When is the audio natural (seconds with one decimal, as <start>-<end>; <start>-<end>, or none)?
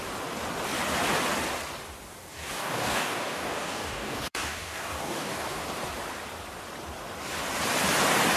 0.0-2.3; 5.6-8.4